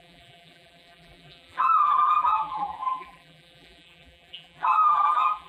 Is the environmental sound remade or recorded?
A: remade